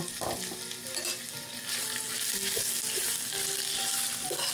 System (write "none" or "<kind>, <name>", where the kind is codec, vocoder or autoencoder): none